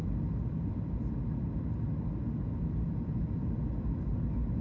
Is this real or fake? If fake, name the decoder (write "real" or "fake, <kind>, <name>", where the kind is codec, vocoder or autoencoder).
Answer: real